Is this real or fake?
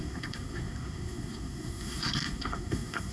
fake